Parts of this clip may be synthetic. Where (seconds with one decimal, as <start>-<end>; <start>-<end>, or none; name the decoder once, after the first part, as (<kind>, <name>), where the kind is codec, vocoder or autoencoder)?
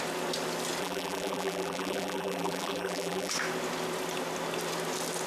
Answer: 0.8-3.3 (vocoder, BigVGAN v2)